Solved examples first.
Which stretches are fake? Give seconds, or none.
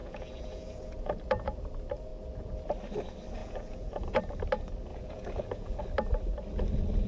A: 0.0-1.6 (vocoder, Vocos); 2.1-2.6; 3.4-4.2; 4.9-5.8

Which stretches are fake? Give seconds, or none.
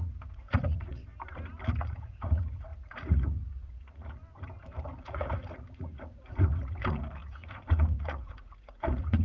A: 0.0-1.0 (vocoder, Vocos); 1.8-4.2; 5.0-9.2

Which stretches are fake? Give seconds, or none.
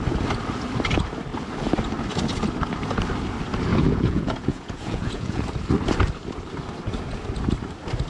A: 3.7-5.4 (vocoder, Vocos)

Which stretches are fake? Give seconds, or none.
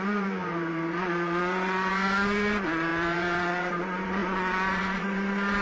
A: 0.0-5.6 (vocoder, Vocos)